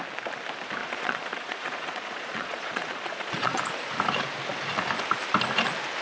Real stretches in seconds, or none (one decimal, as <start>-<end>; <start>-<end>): 0.0-0.8; 3.6-6.0